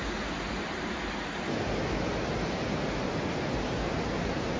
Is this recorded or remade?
recorded